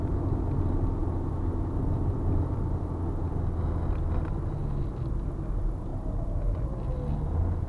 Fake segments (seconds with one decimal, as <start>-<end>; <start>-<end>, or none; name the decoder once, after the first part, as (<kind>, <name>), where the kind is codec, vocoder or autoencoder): none